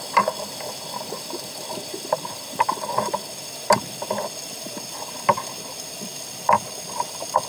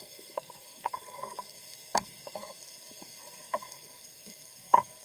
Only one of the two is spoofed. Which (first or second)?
second